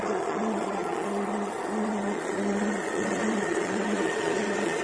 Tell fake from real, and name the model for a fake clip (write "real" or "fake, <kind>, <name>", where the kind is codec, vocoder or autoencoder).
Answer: fake, vocoder, Vocos